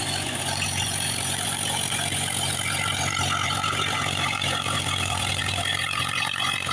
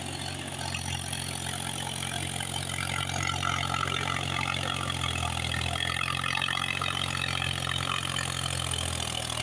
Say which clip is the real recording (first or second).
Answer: second